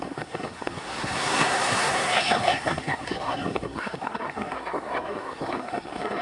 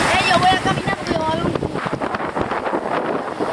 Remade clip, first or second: first